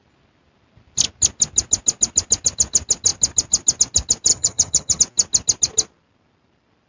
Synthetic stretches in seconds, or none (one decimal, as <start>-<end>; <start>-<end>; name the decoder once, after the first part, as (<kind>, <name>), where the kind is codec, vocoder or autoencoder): 4.3-5.0 (vocoder, HiFi-GAN)